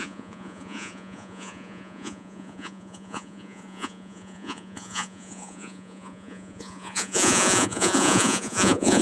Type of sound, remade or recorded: remade